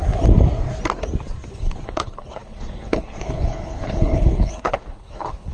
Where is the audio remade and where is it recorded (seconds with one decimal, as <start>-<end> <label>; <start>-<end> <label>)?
0.0-1.5 recorded; 1.5-5.5 remade